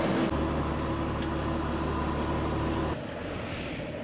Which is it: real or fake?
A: real